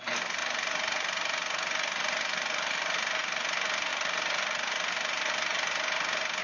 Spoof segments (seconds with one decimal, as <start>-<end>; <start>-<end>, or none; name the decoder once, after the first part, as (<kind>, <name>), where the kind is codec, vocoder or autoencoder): none